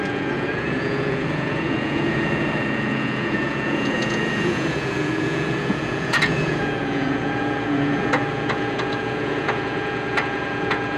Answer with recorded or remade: remade